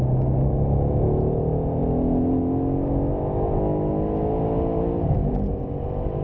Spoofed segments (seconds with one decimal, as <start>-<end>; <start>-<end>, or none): none